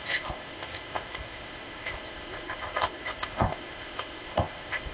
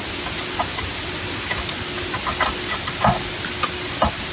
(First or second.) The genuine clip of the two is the second